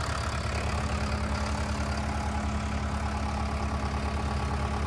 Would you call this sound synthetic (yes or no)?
no